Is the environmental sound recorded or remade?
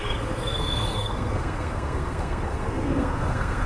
remade